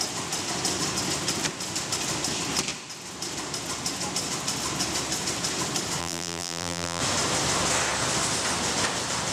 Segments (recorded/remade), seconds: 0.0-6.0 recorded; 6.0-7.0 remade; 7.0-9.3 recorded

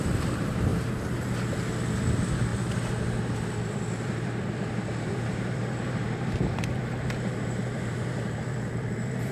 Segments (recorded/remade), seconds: 0.0-0.7 remade; 0.7-2.1 recorded; 2.1-2.5 remade; 2.5-3.5 recorded; 3.5-9.3 remade

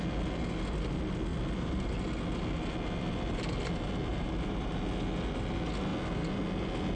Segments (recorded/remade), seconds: 0.0-4.1 recorded; 4.1-4.7 remade; 4.7-7.0 recorded

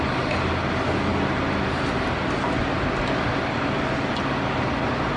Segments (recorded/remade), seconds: 0.0-5.2 recorded

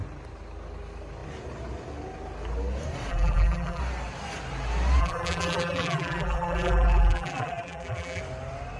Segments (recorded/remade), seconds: 0.0-3.1 recorded; 3.1-3.8 remade; 3.8-5.0 recorded; 5.0-8.2 remade; 8.2-8.8 recorded

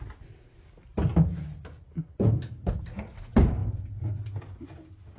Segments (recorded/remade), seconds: 0.0-3.6 recorded; 3.6-4.6 remade; 4.6-5.2 recorded

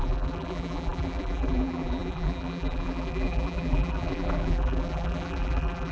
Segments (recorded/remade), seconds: 0.0-5.9 remade

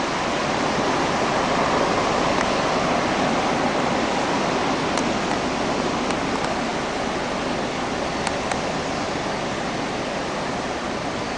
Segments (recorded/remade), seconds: 0.0-10.2 recorded; 10.2-11.4 remade